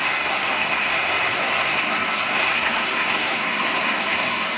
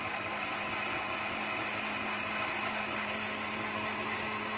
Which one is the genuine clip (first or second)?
second